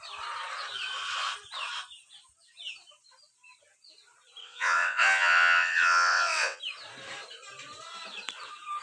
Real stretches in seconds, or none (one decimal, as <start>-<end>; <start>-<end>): 0.0-4.4; 6.6-8.8